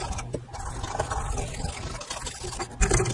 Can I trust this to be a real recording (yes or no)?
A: yes